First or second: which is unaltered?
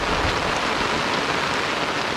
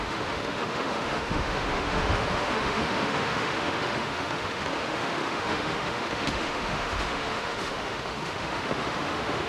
first